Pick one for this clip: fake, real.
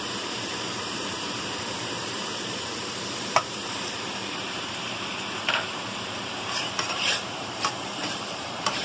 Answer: fake